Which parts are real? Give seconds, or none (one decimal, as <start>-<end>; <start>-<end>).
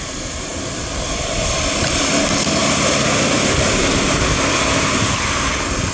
0.0-5.9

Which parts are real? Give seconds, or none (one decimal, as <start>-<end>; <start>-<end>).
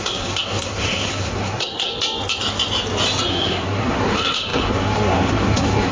1.9-3.3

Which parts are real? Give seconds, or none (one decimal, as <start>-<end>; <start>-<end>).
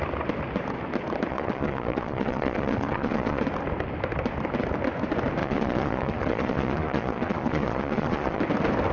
0.0-1.3; 3.4-5.4; 8.4-8.9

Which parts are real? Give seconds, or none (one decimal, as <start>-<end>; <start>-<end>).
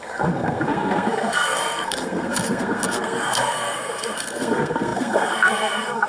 none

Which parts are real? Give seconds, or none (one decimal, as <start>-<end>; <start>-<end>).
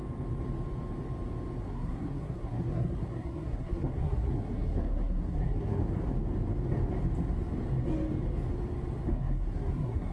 0.0-1.6; 5.8-9.1